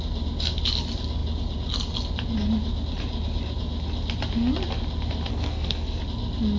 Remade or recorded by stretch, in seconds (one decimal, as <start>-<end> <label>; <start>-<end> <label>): 0.0-5.3 recorded; 5.3-6.0 remade; 6.0-6.6 recorded